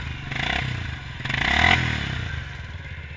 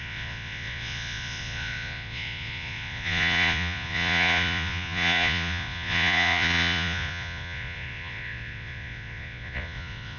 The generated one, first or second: second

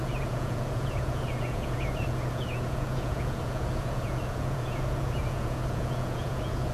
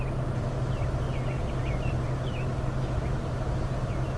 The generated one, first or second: first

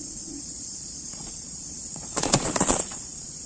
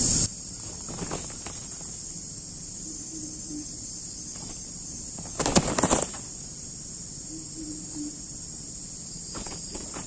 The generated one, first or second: first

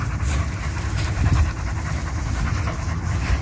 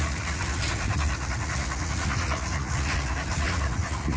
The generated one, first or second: second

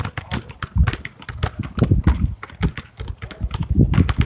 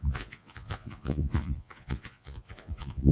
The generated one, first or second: second